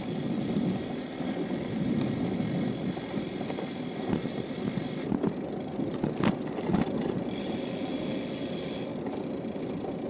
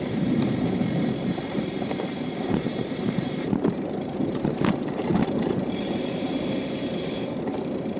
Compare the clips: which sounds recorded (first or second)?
first